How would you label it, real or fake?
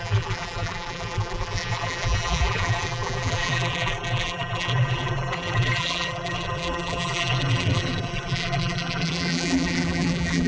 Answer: fake